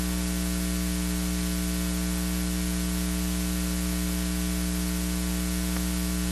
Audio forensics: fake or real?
real